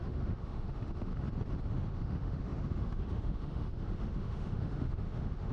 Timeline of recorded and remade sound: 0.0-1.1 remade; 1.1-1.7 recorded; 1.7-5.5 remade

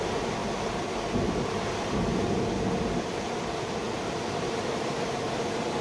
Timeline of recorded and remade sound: 0.0-0.4 remade; 0.4-2.8 recorded; 2.8-5.8 remade

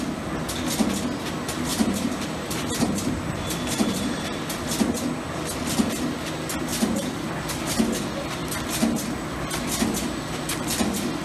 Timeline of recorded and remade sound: 0.0-1.7 recorded; 1.7-4.4 remade; 4.4-6.7 recorded; 6.7-7.3 remade; 7.3-11.2 recorded